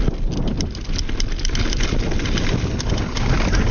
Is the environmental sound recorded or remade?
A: recorded